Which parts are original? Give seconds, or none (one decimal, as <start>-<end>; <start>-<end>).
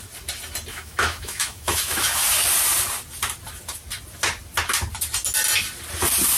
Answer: 0.0-0.7; 2.2-6.4